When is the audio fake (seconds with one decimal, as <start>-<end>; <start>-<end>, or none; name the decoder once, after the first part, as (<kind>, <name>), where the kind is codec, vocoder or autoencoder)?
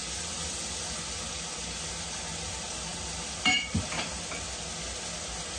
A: none